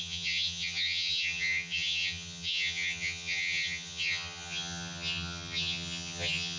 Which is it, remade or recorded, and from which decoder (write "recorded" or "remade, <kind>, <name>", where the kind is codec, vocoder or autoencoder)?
remade, vocoder, HiFi-GAN